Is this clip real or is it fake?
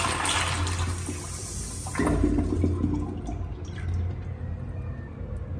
real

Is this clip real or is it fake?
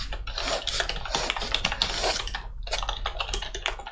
real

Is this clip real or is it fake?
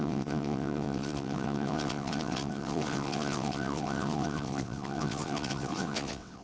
fake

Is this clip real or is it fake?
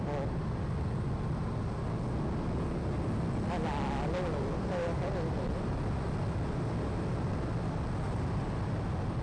real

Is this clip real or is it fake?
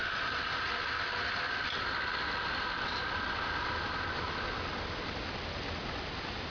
real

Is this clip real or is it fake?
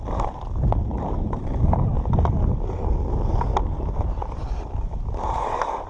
real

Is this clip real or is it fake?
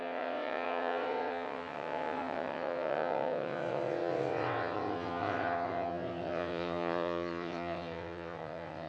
fake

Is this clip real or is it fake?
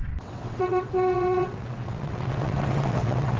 fake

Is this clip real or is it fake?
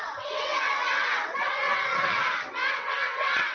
fake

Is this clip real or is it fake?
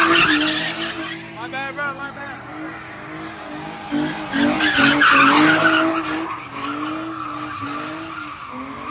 real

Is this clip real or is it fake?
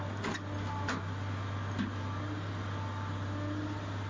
real